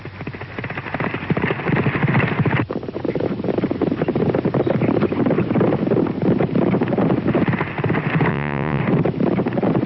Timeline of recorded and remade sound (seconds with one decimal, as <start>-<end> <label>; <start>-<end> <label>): 0.0-8.3 recorded; 8.3-8.8 remade; 8.8-9.9 recorded